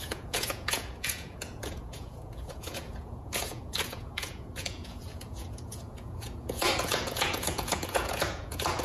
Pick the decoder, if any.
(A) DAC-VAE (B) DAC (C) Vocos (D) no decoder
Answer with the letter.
C